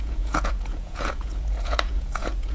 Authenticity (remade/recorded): remade